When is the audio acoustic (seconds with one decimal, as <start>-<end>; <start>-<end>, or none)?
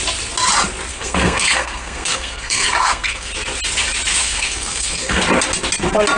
0.0-0.9; 3.3-4.2; 5.2-6.2